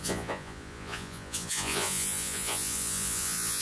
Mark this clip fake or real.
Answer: fake